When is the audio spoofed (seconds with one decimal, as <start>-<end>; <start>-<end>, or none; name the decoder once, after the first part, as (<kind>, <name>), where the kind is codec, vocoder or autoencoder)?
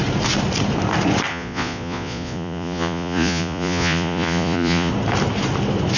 1.3-4.9 (vocoder, Vocos)